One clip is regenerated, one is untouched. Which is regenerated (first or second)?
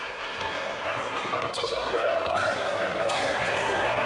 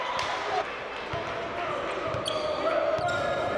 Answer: first